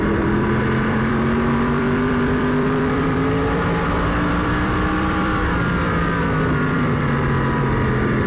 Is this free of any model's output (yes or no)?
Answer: no